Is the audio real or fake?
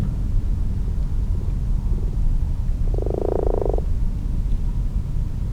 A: real